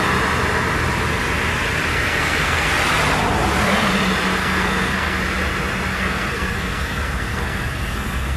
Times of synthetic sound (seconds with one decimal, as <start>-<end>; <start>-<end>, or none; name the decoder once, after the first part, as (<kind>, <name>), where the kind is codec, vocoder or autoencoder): 1.9-2.7 (codec, SNAC); 4.4-5.2; 5.9-8.4